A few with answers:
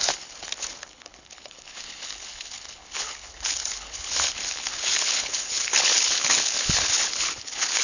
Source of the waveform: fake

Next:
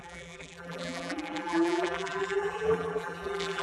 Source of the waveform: fake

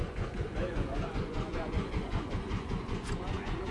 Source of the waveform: fake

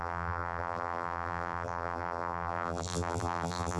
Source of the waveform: fake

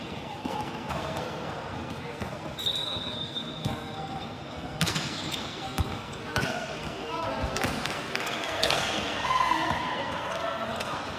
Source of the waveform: fake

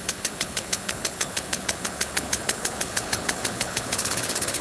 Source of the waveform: fake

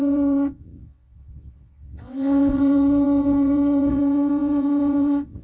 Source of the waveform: fake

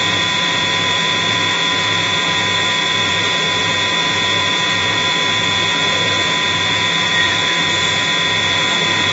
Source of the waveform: fake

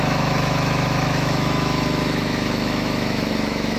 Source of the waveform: fake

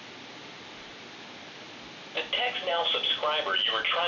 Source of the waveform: real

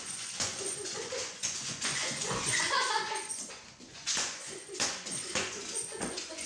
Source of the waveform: fake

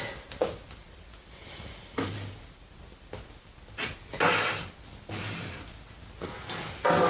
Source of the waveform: real